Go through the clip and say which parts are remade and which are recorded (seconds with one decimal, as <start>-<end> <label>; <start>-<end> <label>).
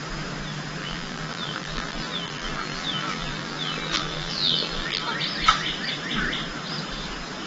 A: 0.0-0.8 recorded; 0.8-5.0 remade; 5.0-7.5 recorded